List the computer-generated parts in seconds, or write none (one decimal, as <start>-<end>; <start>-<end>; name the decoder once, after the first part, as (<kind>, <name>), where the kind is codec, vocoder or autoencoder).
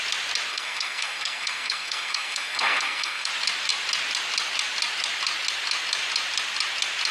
0.5-3.3 (codec, SNAC)